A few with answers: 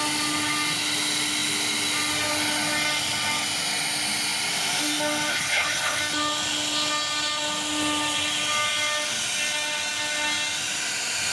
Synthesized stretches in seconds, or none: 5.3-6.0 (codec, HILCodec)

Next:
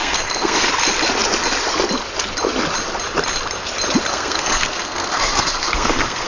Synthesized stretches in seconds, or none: 0.0-0.7 (codec, SNAC); 4.1-6.3

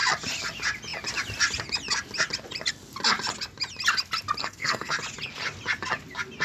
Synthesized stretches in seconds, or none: 4.4-4.9 (codec, SNAC)